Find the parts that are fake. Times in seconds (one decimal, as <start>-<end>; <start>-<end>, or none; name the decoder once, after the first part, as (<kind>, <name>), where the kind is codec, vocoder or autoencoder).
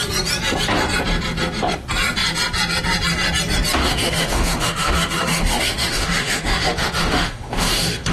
3.8-8.1 (autoencoder, DAC-VAE)